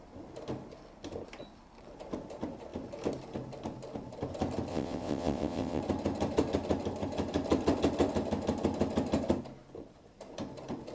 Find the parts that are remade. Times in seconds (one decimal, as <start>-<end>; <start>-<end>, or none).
4.7-5.8